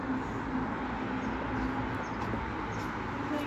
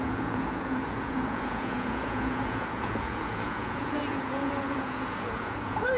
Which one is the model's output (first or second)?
second